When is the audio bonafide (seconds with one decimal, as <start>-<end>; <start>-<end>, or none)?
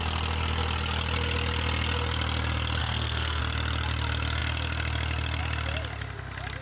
0.0-2.8; 3.4-6.6